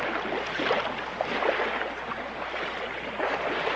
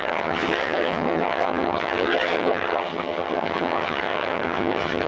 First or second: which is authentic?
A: first